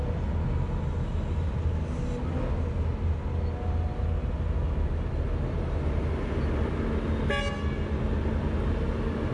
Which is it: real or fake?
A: real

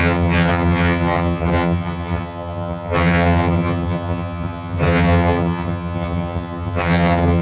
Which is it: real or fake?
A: fake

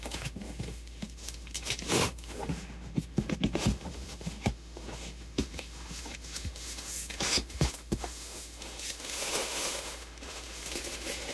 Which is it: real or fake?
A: fake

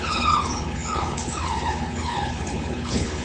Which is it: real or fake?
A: fake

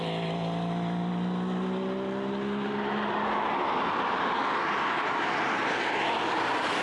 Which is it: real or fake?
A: real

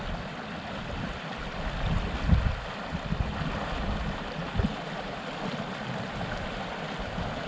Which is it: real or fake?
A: real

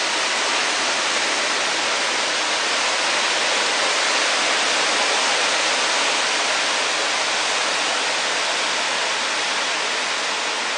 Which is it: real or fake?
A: real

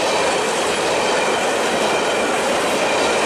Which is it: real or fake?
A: real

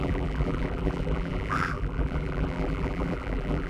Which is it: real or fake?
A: fake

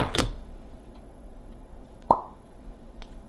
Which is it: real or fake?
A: fake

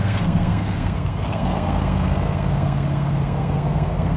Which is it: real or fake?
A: fake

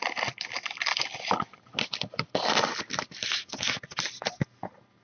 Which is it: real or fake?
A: real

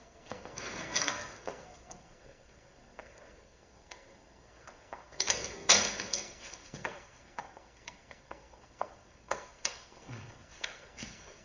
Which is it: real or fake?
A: fake